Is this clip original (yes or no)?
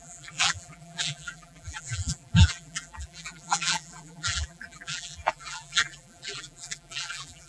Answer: no